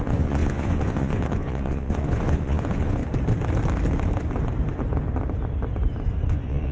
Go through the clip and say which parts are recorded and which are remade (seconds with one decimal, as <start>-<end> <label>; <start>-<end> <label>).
0.0-3.0 remade; 3.0-6.3 recorded; 6.3-6.7 remade